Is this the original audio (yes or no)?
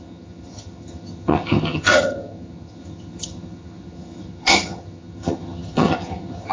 no